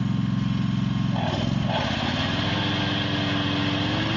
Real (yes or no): yes